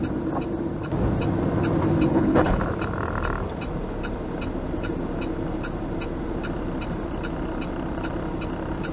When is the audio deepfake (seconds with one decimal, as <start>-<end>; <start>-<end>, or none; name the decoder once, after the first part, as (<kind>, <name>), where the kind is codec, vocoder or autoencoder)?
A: 2.1-2.6 (codec, HILCodec)